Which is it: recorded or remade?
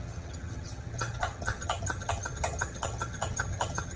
remade